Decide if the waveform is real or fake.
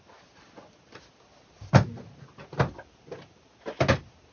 real